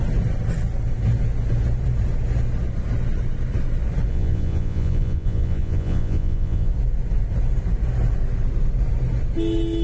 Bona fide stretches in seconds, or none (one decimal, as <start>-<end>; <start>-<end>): 0.0-4.1; 6.7-9.8

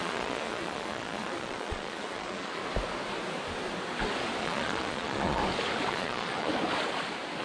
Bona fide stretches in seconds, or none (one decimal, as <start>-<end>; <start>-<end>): 2.6-4.4; 5.4-5.9; 6.5-7.4

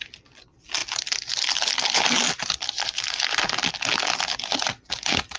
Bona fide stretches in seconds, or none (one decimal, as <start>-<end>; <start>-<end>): 0.0-5.4

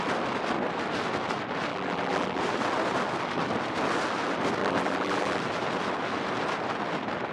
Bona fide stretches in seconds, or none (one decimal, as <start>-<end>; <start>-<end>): 0.0-1.7; 2.4-4.6; 5.4-7.3

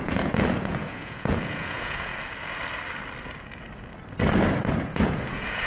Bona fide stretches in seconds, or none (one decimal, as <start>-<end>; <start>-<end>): 2.1-4.7

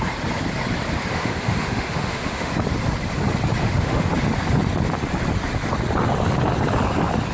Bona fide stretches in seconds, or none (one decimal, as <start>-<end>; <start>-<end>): 0.0-1.1; 2.5-3.6; 4.1-7.3

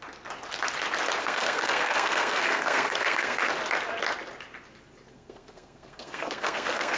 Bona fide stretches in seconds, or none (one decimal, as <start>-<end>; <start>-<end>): 0.0-1.2; 3.4-5.1

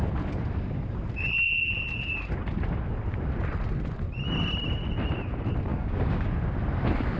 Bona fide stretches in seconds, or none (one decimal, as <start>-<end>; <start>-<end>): 0.0-5.7; 6.3-7.2